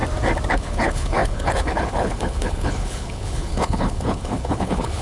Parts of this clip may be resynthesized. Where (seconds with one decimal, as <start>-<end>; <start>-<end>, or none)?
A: 0.5-5.0

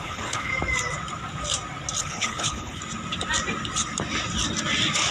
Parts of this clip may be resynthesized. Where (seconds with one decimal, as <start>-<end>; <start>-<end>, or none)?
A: 0.0-0.5; 2.0-2.8

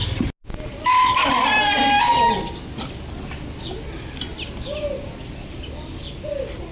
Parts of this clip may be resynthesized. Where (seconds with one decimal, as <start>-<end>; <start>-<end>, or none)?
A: none

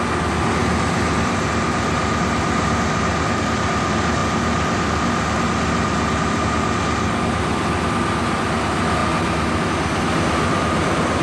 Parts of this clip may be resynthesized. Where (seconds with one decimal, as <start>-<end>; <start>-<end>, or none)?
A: none

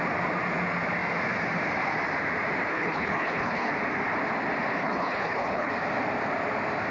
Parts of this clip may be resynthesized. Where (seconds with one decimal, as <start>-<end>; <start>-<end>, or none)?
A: 2.7-3.7; 4.8-5.7

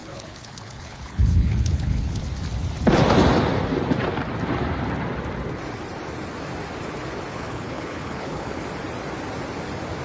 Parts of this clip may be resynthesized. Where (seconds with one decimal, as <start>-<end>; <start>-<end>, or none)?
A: 0.0-2.2; 7.3-8.6

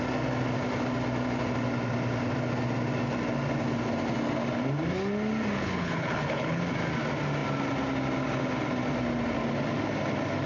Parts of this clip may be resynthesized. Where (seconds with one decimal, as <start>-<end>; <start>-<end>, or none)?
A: 5.6-6.6

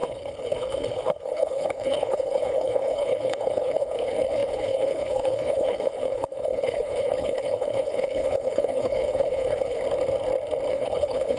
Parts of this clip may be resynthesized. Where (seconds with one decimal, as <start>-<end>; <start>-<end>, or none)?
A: 0.0-9.8; 10.7-11.4